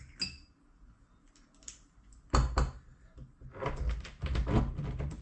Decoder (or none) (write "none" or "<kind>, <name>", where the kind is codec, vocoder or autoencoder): none